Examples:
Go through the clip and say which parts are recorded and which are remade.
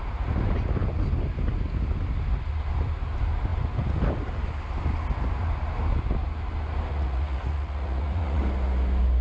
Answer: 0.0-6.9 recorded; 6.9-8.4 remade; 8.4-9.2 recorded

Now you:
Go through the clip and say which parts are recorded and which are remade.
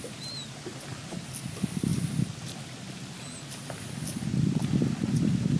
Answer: 0.0-5.6 recorded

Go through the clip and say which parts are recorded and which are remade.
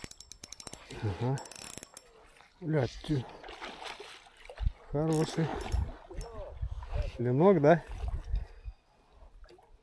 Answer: 0.0-9.8 recorded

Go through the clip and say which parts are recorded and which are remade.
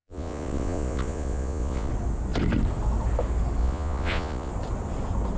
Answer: 0.0-1.9 remade; 1.9-3.6 recorded; 3.6-4.5 remade; 4.5-5.4 recorded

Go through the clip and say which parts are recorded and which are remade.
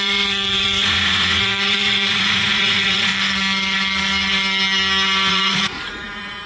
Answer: 0.0-3.1 remade; 3.1-5.3 recorded; 5.3-6.5 remade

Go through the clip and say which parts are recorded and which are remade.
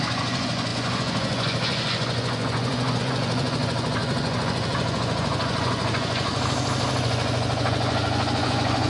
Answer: 0.0-6.3 remade; 6.3-7.0 recorded; 7.0-8.9 remade